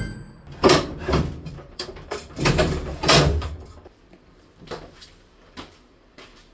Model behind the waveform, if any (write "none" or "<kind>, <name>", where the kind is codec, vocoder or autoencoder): vocoder, BigVGAN v2